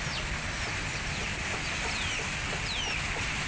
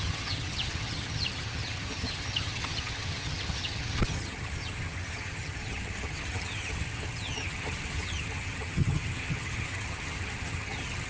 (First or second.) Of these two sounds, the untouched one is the first